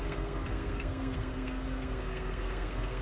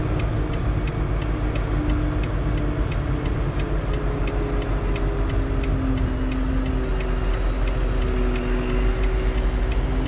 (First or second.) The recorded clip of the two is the second